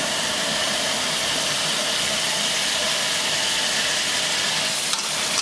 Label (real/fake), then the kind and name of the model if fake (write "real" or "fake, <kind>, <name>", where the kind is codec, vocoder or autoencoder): fake, vocoder, BigVGAN v2